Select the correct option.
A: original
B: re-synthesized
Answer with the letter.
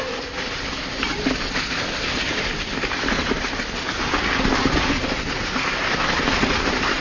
A